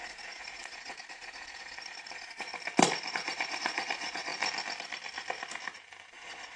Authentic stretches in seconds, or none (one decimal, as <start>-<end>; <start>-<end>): 2.5-3.1; 4.3-6.1